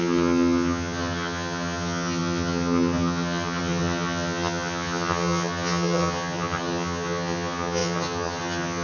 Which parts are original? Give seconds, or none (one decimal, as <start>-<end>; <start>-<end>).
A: none